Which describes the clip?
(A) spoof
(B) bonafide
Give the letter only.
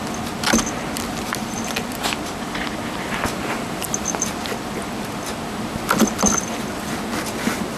B